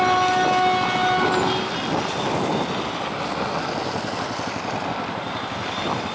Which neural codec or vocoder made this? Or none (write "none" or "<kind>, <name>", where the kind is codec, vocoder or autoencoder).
none